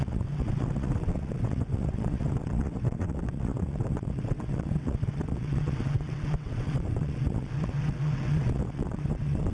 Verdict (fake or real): fake